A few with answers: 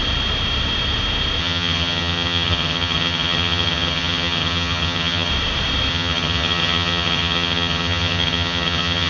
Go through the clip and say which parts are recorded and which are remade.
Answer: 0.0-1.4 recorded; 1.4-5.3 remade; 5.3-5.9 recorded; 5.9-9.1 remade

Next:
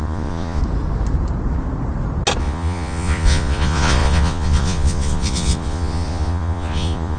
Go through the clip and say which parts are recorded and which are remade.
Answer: 0.0-0.6 remade; 0.6-2.4 recorded; 2.4-7.2 remade

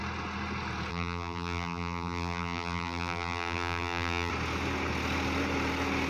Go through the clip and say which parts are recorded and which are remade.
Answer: 0.0-0.9 recorded; 0.9-4.3 remade; 4.3-6.1 recorded

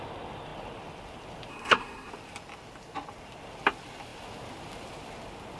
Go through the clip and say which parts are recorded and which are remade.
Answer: 0.0-1.5 recorded; 1.5-2.1 remade; 2.1-5.6 recorded

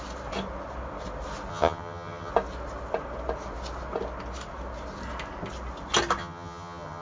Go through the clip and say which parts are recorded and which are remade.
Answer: 0.0-1.5 recorded; 1.5-2.3 remade; 2.3-6.2 recorded; 6.2-7.0 remade

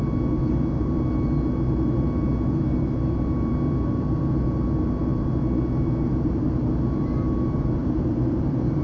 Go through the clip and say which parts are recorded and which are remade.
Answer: 0.0-7.8 recorded; 7.8-8.8 remade

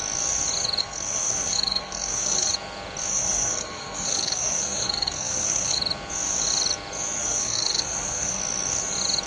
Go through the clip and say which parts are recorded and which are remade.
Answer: 0.0-0.8 recorded; 0.8-2.5 remade; 2.5-3.1 recorded; 3.1-5.8 remade; 5.8-7.2 recorded; 7.2-8.4 remade; 8.4-9.3 recorded